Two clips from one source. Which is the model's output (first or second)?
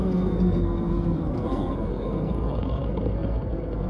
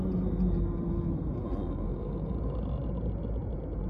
first